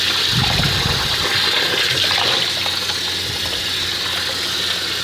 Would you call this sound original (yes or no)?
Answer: yes